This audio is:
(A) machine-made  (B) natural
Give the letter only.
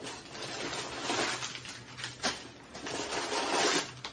B